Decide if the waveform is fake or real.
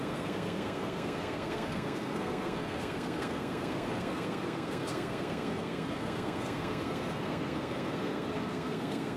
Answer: fake